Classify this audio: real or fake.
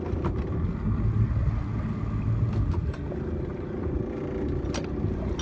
real